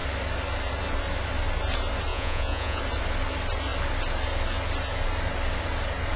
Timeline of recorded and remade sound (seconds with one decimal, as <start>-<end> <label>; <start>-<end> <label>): 0.0-2.1 recorded; 2.1-2.8 remade; 2.8-6.2 recorded